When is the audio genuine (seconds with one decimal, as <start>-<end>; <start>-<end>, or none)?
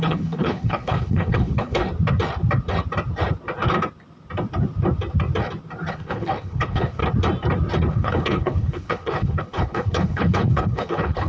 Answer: 1.8-5.9; 7.0-7.9